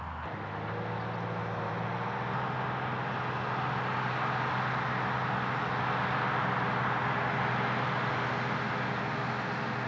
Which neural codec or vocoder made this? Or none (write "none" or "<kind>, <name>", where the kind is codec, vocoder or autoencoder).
none